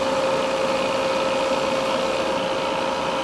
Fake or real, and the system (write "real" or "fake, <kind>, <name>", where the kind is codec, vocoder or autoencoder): real